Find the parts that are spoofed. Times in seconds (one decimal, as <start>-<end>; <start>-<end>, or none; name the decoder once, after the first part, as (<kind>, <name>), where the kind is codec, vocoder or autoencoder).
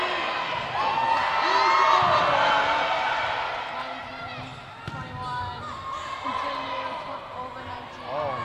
none